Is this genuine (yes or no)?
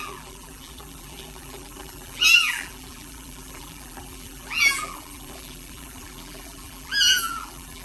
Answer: no